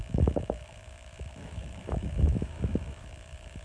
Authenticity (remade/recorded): remade